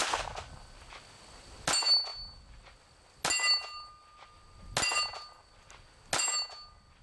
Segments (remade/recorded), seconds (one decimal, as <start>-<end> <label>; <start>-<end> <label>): 0.0-7.0 recorded